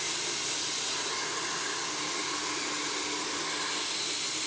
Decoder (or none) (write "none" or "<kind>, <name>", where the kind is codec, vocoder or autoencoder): none